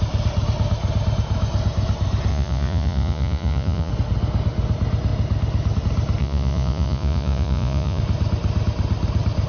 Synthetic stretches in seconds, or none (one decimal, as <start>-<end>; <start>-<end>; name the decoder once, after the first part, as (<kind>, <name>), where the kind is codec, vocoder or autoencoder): 2.3-3.9 (vocoder, Vocos); 6.2-8.0